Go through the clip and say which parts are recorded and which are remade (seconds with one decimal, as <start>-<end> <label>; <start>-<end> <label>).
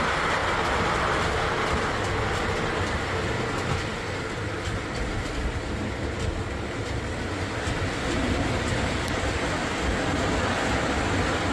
0.0-11.5 recorded